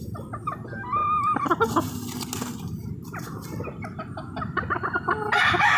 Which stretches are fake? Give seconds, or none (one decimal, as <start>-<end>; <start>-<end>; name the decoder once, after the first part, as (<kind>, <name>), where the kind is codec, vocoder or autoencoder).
none